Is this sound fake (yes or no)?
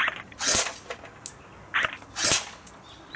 no